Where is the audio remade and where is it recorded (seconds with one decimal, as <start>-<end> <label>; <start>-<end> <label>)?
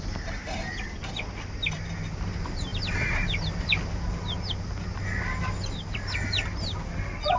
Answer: 0.0-7.4 recorded